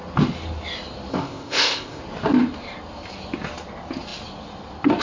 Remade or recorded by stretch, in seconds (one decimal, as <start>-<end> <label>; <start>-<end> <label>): 0.0-1.1 recorded; 1.1-2.0 remade; 2.0-5.0 recorded